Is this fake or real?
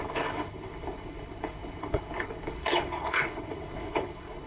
fake